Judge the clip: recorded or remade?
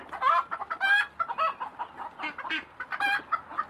recorded